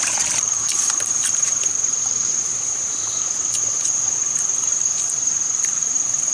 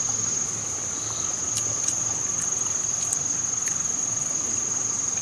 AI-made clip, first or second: first